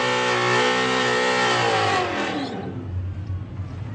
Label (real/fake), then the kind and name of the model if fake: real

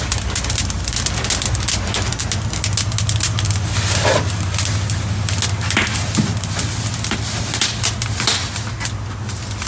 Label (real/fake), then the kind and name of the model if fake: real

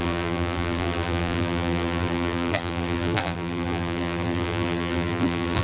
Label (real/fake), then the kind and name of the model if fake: fake, vocoder, BigVGAN v2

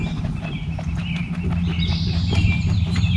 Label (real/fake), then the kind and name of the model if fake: fake, vocoder, BigVGAN v2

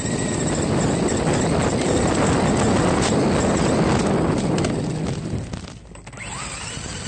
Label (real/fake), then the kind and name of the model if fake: real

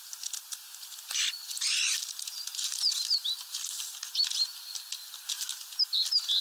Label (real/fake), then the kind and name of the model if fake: real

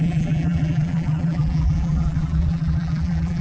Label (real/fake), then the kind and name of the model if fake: fake, vocoder, BigVGAN v2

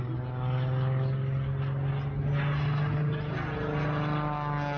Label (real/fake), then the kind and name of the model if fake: real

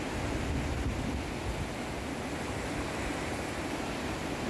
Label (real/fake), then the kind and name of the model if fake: real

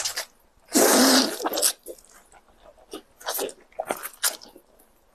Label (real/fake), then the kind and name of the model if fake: real